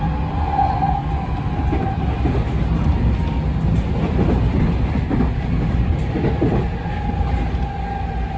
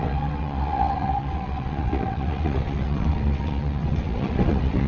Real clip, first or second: first